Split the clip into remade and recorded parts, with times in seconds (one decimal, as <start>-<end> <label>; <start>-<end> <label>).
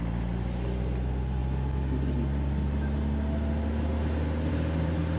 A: 0.0-5.2 recorded